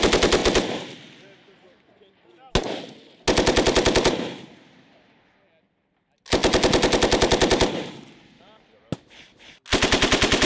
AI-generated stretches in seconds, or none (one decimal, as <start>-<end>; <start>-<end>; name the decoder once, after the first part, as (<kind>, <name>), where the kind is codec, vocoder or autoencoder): none